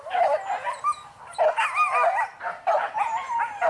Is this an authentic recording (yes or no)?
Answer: yes